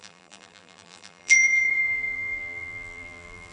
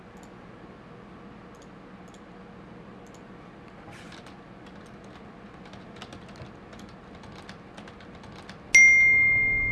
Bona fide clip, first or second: second